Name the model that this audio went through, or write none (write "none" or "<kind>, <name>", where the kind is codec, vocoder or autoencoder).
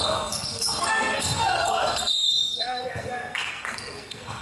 codec, SNAC